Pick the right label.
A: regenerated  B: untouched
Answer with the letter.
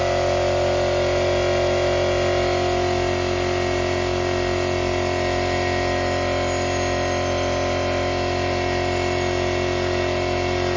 B